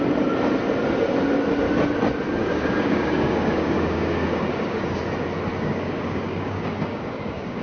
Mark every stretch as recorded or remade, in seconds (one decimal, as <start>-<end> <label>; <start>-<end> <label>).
0.0-2.4 recorded; 2.4-5.0 remade; 5.0-5.5 recorded; 5.5-7.6 remade